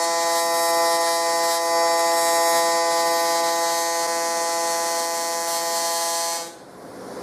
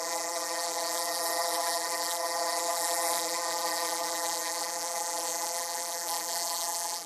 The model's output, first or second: second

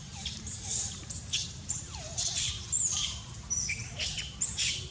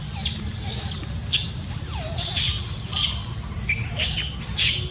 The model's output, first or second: first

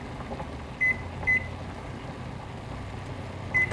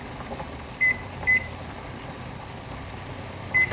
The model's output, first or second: second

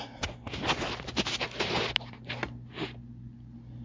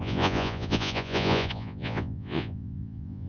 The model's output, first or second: second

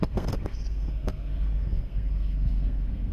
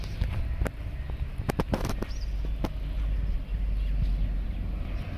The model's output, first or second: first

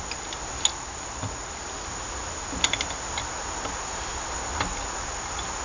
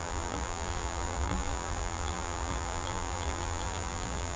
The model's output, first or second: second